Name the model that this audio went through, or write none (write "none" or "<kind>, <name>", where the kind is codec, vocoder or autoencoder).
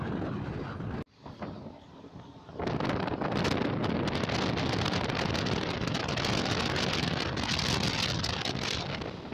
none